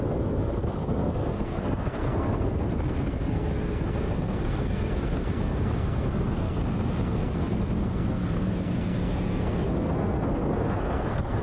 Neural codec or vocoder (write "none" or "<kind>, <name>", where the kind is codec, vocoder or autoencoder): codec, SNAC